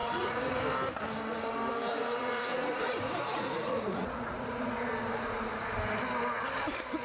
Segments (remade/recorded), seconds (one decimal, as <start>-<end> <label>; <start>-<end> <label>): 0.0-0.6 remade; 0.6-1.9 recorded; 1.9-4.9 remade; 4.9-7.0 recorded